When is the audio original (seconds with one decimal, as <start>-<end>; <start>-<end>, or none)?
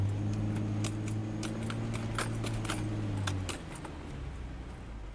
0.0-5.1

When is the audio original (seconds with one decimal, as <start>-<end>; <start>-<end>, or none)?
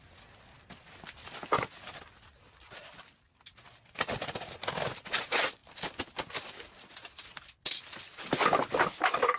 0.0-9.4